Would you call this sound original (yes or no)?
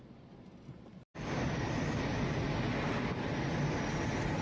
yes